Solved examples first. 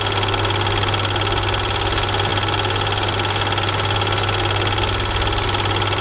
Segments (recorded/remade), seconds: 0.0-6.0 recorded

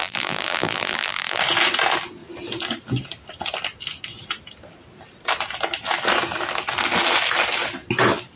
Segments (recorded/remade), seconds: 0.0-1.4 remade; 1.4-8.4 recorded

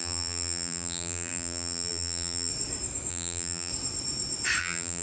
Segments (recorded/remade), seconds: 0.0-2.5 remade; 2.5-3.1 recorded; 3.1-3.7 remade; 3.7-4.6 recorded; 4.6-5.0 remade